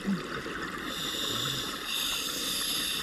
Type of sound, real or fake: real